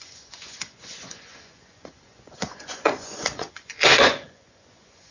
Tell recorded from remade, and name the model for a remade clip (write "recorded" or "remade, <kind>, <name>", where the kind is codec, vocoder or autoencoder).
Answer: remade, vocoder, Vocos